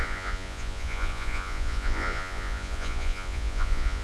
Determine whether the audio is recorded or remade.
remade